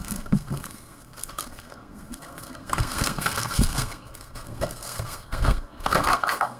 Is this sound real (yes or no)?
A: no